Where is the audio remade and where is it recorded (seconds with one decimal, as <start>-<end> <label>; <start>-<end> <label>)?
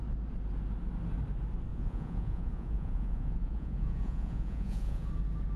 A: 0.0-1.7 recorded; 1.7-5.1 remade; 5.1-5.6 recorded